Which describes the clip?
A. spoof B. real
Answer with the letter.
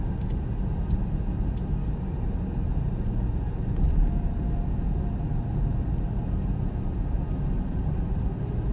B